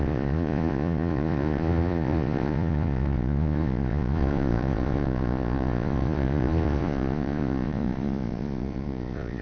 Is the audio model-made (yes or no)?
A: yes